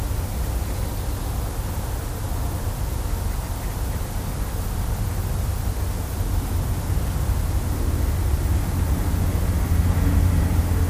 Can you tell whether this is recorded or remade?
recorded